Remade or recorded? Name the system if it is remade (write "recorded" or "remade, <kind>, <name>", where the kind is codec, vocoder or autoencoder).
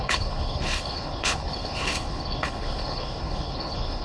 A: remade, codec, HILCodec